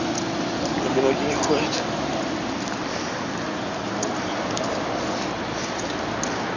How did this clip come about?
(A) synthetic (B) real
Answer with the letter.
B